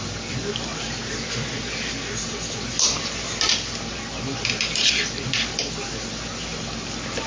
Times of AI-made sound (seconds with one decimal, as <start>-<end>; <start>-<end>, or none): none